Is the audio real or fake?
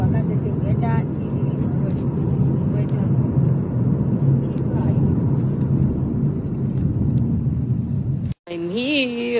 real